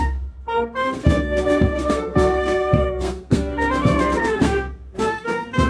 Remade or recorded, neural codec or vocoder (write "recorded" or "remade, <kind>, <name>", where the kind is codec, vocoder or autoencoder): remade, codec, SNAC